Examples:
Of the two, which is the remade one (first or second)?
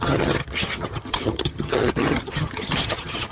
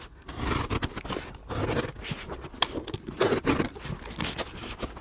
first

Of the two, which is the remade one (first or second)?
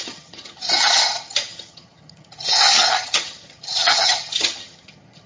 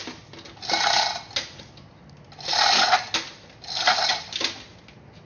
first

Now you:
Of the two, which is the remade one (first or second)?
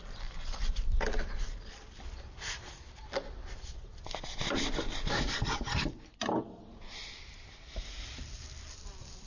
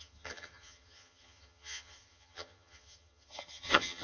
second